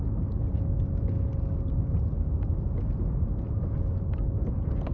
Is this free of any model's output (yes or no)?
yes